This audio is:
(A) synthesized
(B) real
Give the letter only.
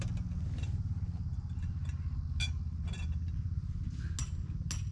B